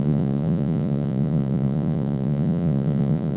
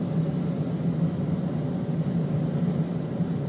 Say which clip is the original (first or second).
second